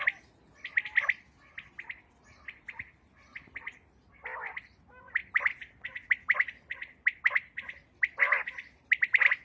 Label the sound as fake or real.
real